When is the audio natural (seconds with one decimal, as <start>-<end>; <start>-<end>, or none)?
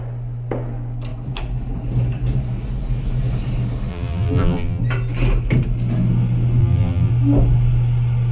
0.0-3.9; 4.8-6.6; 7.1-8.3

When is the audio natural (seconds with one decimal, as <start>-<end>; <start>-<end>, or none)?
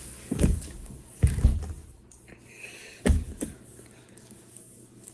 1.5-3.0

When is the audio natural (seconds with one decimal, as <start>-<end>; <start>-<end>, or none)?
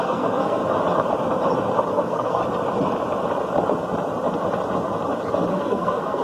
0.6-1.9; 2.4-5.5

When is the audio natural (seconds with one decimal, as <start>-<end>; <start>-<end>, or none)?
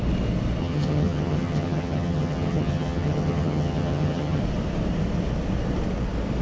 0.0-0.6; 4.4-6.4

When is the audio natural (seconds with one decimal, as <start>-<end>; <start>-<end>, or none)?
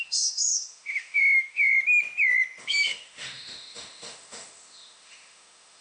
1.7-2.6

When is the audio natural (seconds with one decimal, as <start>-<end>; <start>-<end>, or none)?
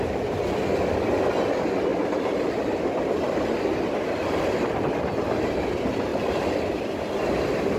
0.0-1.9; 2.9-6.1; 6.8-7.8